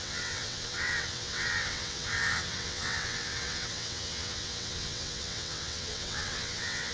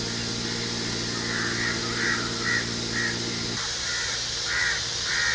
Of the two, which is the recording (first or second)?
second